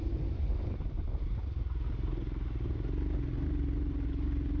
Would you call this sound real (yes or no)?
yes